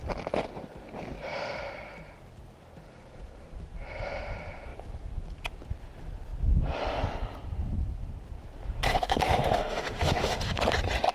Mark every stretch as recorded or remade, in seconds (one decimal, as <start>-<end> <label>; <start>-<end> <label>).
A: 0.0-8.9 recorded; 8.9-10.6 remade; 10.6-11.1 recorded

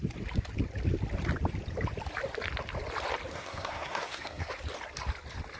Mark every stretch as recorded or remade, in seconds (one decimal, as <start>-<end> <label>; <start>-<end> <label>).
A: 0.0-3.3 recorded; 3.3-4.5 remade; 4.5-5.6 recorded

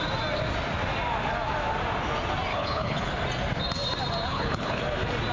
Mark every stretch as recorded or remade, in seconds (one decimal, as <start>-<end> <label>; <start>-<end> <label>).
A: 0.0-2.5 recorded; 2.5-3.2 remade; 3.2-4.3 recorded; 4.3-4.8 remade; 4.8-5.3 recorded

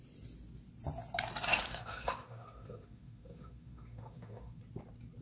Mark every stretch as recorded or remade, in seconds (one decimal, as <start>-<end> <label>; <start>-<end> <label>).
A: 0.0-1.5 recorded; 1.5-4.6 remade; 4.6-5.2 recorded

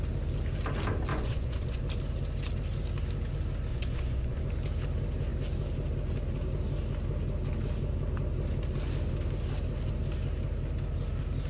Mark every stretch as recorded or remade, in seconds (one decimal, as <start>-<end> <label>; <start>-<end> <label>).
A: 0.0-1.1 recorded; 1.1-1.8 remade; 1.8-3.7 recorded; 3.7-4.4 remade; 4.4-11.5 recorded

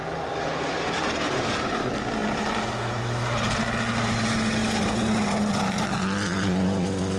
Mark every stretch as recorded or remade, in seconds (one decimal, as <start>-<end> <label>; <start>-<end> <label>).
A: 0.0-7.2 recorded

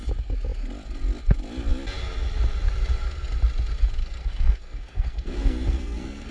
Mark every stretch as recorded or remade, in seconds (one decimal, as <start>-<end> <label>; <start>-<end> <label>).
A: 0.0-4.0 recorded; 4.0-6.3 remade

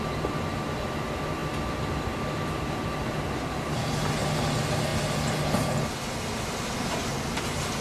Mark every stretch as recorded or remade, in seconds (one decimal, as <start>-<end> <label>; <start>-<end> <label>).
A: 0.0-7.8 recorded